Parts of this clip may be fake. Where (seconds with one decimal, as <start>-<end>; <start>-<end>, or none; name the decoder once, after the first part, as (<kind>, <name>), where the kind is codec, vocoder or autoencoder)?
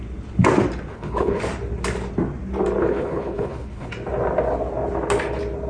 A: 0.9-1.4 (codec, HILCodec); 2.8-3.9